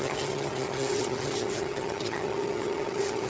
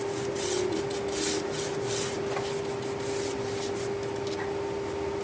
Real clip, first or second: second